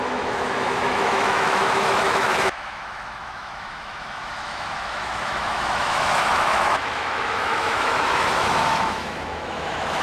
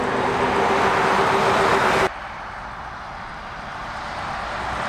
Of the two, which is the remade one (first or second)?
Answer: first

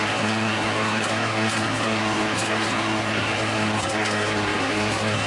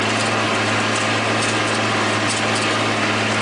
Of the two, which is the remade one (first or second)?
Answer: first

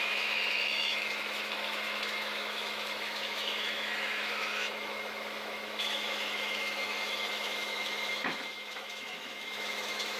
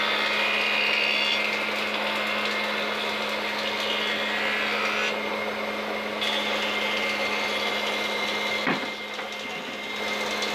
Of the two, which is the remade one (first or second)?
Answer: first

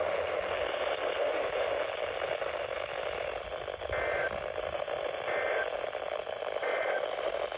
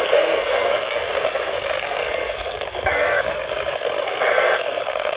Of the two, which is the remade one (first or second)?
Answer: second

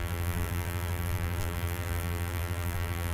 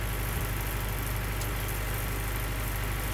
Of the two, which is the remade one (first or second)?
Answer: first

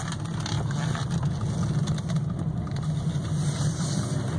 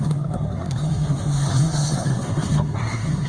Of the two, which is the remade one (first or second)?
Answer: second